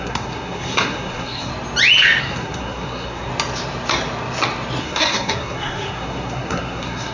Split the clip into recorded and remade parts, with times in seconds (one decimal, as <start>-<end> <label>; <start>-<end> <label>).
0.0-1.5 remade; 1.5-2.2 recorded; 2.2-3.3 remade; 3.3-4.8 recorded; 4.8-7.1 remade